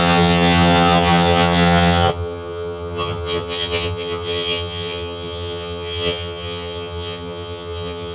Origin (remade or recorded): remade